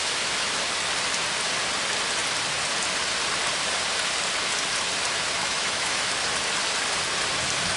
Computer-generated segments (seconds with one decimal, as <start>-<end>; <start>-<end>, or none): 0.0-0.6; 5.4-6.1